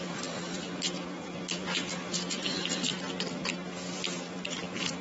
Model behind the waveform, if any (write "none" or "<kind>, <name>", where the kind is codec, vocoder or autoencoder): none